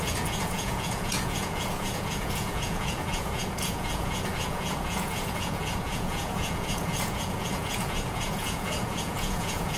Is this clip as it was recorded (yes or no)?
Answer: no